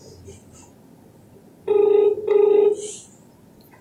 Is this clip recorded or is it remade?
recorded